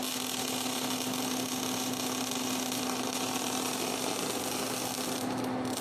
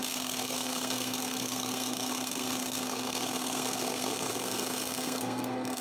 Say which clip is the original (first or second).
first